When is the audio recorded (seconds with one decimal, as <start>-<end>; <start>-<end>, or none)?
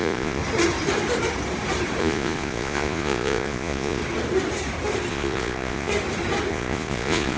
0.4-2.0; 4.0-5.1; 5.9-6.5